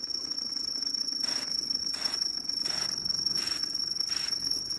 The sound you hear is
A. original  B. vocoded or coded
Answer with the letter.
A